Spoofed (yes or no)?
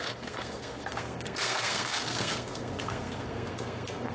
yes